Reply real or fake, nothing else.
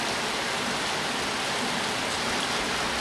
real